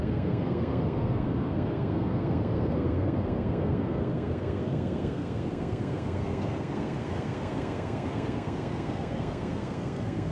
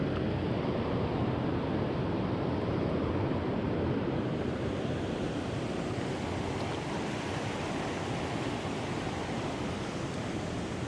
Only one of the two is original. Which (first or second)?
second